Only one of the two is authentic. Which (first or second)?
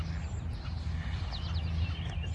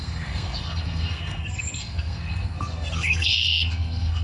first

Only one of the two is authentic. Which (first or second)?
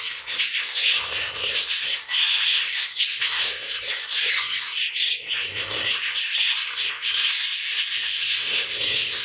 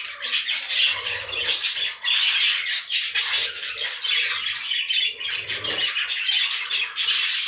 second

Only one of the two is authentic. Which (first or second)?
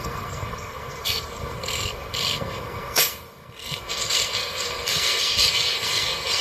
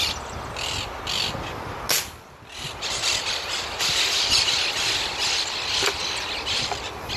second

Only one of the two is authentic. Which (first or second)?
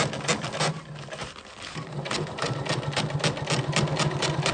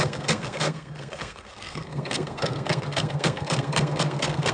first